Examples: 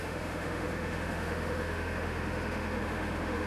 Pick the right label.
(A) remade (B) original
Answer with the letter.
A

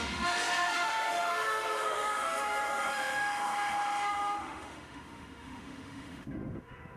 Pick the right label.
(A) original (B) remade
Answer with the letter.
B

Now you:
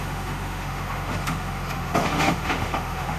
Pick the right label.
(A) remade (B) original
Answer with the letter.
A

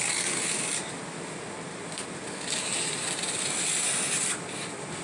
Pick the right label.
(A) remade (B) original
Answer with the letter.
B